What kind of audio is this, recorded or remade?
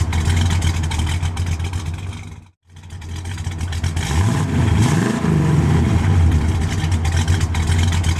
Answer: recorded